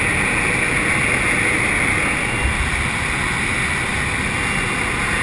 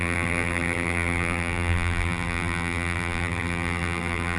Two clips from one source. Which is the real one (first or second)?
first